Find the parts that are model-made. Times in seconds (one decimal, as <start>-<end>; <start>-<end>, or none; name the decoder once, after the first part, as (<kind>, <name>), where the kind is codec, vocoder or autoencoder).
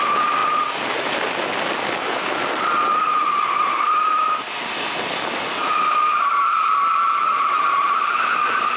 none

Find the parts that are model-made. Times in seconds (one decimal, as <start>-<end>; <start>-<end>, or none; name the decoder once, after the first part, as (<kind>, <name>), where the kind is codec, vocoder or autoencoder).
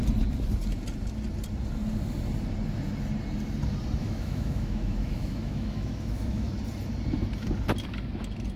4.0-6.5 (autoencoder, DAC-VAE)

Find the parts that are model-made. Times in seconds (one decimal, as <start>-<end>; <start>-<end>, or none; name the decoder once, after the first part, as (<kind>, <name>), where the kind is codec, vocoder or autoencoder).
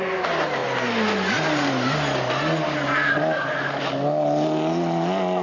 none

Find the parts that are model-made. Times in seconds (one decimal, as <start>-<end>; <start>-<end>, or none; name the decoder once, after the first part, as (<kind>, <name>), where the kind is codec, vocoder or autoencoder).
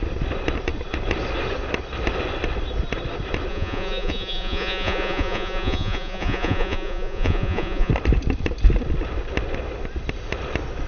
3.5-7.9 (vocoder, Vocos)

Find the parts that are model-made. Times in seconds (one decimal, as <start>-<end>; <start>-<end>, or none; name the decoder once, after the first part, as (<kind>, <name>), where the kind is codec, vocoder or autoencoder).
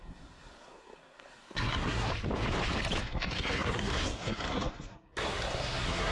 0.0-2.1 (codec, SNAC); 3.0-6.1